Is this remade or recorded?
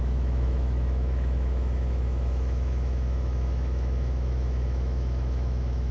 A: remade